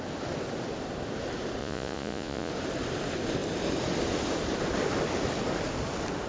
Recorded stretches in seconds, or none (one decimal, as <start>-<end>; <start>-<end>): 0.0-1.6; 2.5-6.3